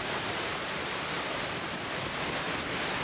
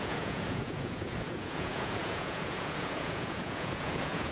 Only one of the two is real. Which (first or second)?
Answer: first